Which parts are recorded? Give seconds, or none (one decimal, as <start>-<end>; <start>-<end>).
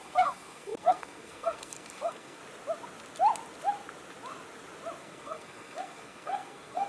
2.4-5.0